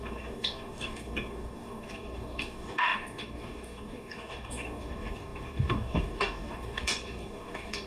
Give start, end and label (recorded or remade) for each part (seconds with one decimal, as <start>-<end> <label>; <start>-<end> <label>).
0.0-7.9 remade